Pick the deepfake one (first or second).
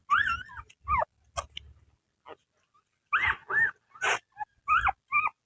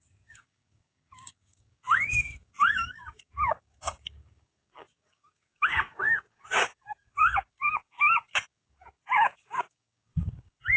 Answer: second